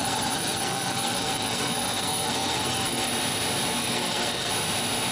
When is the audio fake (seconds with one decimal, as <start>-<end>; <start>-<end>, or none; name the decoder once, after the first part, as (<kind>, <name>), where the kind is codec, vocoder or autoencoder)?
0.0-3.1 (codec, SNAC); 3.8-4.5